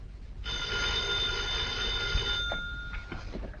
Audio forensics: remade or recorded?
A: recorded